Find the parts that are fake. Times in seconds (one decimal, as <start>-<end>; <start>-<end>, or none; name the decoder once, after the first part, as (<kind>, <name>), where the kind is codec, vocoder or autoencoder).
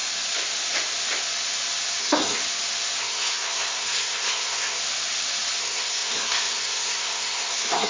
2.0-2.4 (codec, SNAC); 3.0-4.8; 5.6-7.9